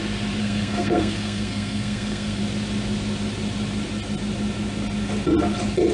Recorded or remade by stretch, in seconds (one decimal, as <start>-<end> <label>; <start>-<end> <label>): 0.0-0.4 recorded; 0.4-2.4 remade; 2.4-5.9 recorded